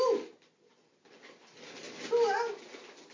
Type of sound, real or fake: real